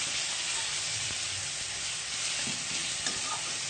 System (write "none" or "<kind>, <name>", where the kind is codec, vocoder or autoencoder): none